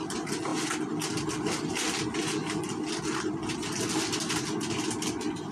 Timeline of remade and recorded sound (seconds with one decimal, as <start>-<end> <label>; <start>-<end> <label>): 0.0-5.5 recorded